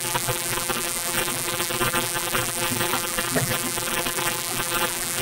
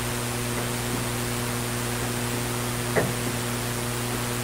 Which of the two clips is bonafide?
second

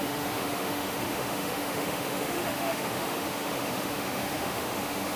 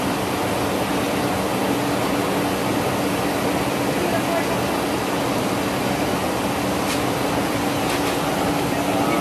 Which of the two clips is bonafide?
second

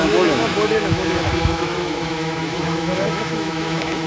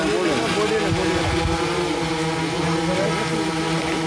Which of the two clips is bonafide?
second